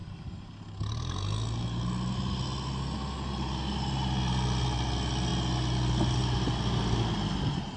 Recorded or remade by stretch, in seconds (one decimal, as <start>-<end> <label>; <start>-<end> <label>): 0.0-7.8 recorded